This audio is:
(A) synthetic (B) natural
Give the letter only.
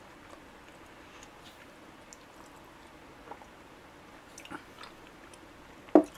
B